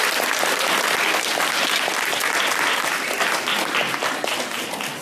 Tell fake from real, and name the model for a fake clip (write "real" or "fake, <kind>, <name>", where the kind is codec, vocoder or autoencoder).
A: real